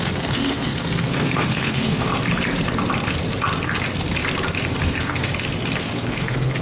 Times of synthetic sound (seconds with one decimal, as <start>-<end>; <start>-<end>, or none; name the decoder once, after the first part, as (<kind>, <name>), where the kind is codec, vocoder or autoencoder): 0.0-2.1 (codec, SNAC); 4.8-5.3; 5.8-6.6